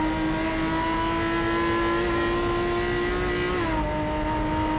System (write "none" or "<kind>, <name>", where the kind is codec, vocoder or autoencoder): none